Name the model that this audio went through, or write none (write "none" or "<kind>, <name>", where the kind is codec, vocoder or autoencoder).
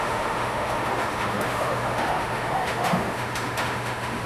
autoencoder, DAC-VAE